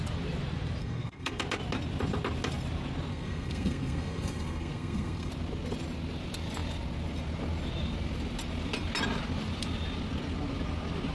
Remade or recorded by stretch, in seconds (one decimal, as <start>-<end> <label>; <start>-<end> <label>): 0.0-0.8 recorded; 0.8-1.4 remade; 1.4-3.1 recorded; 3.1-5.3 remade; 5.3-11.1 recorded